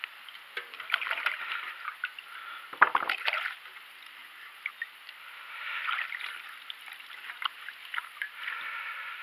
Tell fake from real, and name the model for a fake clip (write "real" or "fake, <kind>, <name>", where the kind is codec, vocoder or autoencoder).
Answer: real